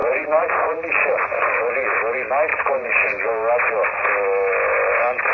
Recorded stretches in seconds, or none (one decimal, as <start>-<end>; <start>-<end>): 2.0-2.5; 3.3-5.3